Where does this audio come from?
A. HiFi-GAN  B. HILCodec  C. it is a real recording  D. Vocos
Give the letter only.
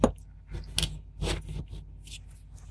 C